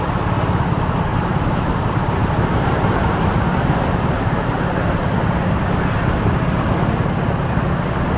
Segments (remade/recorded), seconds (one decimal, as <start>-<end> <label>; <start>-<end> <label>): 0.0-1.1 recorded; 1.1-1.8 remade; 1.8-2.2 recorded; 2.2-5.6 remade; 5.6-8.2 recorded